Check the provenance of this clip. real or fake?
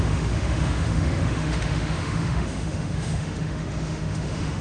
fake